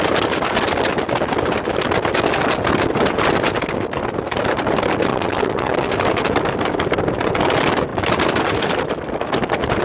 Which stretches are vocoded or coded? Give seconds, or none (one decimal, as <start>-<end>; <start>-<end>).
5.1-5.9